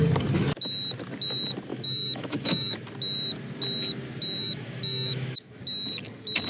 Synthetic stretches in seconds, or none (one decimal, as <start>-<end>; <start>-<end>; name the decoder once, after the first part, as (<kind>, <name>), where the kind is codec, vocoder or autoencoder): 1.7-2.8 (autoencoder, DAC-VAE); 4.4-5.6